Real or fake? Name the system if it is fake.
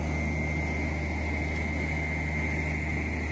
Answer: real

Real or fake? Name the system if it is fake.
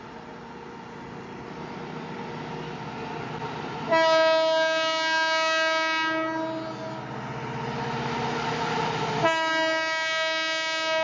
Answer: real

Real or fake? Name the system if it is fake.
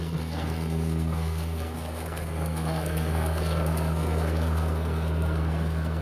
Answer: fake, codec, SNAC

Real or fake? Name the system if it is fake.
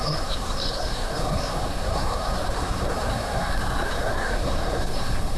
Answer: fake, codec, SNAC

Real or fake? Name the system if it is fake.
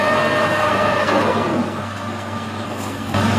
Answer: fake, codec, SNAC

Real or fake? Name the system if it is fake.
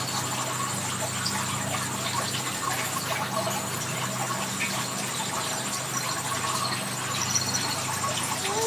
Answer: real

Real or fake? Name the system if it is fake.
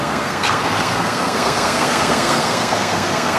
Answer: fake, codec, SNAC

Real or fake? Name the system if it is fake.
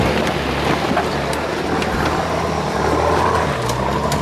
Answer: real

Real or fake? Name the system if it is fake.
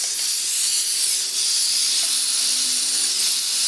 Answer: real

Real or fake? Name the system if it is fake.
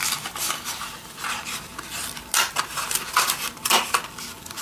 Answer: real